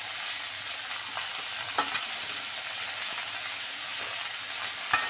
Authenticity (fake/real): real